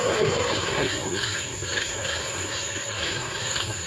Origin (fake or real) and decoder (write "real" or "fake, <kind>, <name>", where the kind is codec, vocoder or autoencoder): fake, codec, SNAC